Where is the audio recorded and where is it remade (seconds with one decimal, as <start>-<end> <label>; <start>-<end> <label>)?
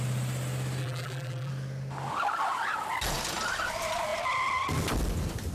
0.0-0.8 recorded; 0.8-1.5 remade; 1.5-5.5 recorded